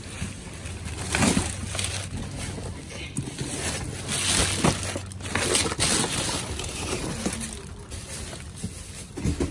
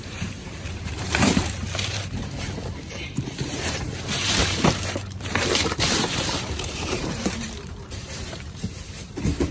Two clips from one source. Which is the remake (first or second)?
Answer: second